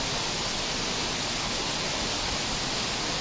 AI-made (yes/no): no